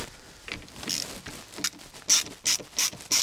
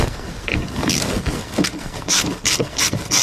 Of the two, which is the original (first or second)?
first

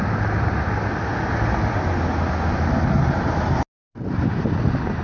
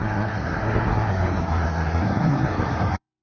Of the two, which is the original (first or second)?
first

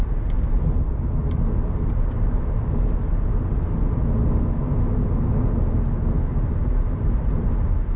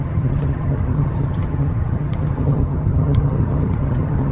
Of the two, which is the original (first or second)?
first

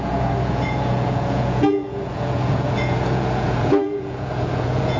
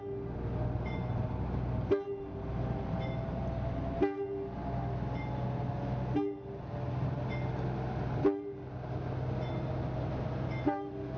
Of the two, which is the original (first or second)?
second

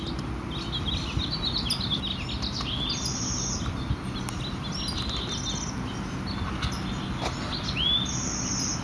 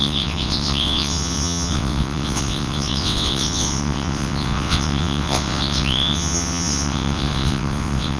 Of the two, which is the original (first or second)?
first